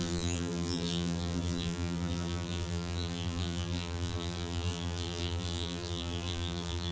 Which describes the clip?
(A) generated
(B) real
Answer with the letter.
A